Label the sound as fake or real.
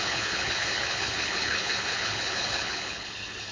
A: fake